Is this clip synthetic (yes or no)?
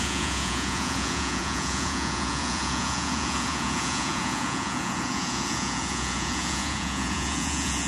yes